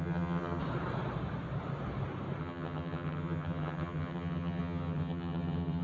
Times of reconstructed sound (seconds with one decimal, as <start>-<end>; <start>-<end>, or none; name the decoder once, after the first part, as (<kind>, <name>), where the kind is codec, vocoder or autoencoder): 0.0-0.6 (vocoder, HiFi-GAN); 2.4-5.8

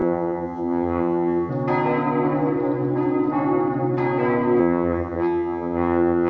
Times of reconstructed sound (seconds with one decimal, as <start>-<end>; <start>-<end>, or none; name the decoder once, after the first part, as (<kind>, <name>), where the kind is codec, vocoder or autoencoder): 0.0-1.5 (vocoder, HiFi-GAN); 4.6-6.3

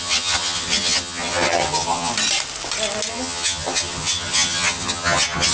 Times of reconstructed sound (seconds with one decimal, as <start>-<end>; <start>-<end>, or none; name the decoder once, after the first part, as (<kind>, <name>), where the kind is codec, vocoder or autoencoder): 0.0-2.1 (vocoder, HiFi-GAN); 3.1-5.5

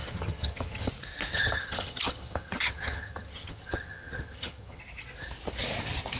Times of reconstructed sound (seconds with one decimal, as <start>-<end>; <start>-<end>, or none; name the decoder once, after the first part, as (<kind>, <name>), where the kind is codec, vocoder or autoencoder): 0.0-0.9 (vocoder, HiFi-GAN); 1.3-4.8

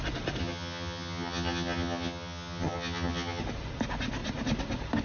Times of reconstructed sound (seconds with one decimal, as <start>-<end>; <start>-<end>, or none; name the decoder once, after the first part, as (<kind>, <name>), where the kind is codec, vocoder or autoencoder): 0.4-3.4 (vocoder, HiFi-GAN)